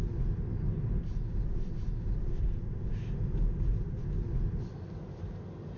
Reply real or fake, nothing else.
real